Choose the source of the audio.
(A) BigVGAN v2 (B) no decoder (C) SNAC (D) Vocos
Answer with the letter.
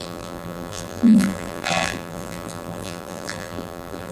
A